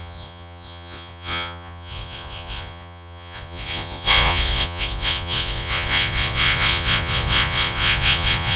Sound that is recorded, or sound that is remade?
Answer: remade